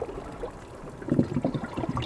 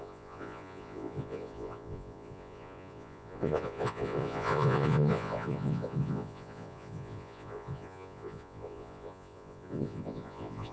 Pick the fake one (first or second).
second